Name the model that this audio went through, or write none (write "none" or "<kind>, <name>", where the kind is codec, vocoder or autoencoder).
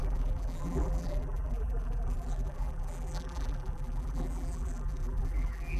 vocoder, BigVGAN v2